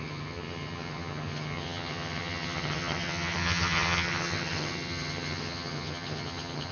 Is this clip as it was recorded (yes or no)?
no